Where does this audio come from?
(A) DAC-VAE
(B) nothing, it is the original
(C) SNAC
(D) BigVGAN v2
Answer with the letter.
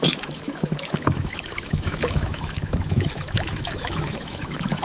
A